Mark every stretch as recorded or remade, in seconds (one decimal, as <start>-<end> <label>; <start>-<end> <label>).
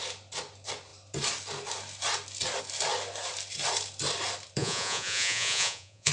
0.0-4.6 recorded; 4.6-6.1 remade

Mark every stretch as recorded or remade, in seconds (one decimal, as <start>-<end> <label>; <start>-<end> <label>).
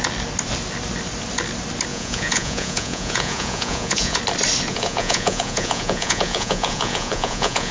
0.0-1.9 recorded; 1.9-4.2 remade; 4.2-4.7 recorded; 4.7-7.7 remade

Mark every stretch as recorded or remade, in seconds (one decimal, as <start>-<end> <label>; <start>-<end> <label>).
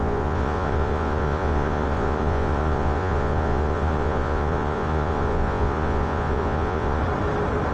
0.0-7.0 remade; 7.0-7.7 recorded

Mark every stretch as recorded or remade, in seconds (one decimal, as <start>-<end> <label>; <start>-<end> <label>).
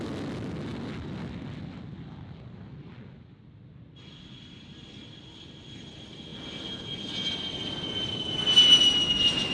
0.0-9.5 recorded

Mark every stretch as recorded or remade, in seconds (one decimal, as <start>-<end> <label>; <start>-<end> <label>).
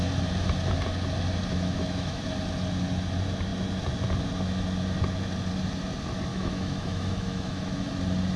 0.0-1.5 recorded; 1.5-2.2 remade; 2.2-6.3 recorded; 6.3-7.9 remade; 7.9-8.4 recorded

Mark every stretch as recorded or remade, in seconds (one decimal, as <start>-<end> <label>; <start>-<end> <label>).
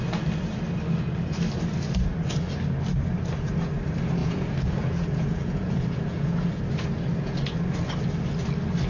0.0-4.2 recorded; 4.2-6.6 remade; 6.6-8.9 recorded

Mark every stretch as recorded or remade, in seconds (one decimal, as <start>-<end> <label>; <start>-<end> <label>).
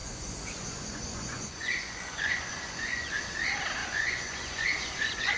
0.0-3.2 remade; 3.2-3.8 recorded; 3.8-5.4 remade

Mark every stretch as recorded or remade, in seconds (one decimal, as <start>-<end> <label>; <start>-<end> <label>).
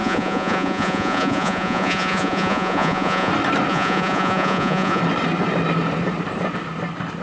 0.0-3.3 remade; 3.3-3.7 recorded; 3.7-5.0 remade; 5.0-7.2 recorded